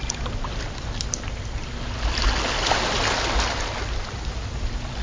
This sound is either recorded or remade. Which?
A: recorded